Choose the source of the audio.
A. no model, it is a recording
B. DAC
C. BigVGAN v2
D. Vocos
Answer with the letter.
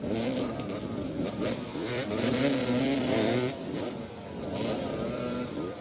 C